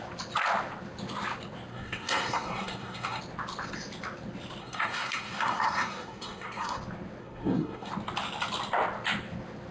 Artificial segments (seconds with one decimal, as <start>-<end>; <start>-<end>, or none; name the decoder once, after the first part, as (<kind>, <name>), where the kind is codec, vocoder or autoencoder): 1.7-3.2 (codec, SNAC); 4.6-6.8; 7.2-7.9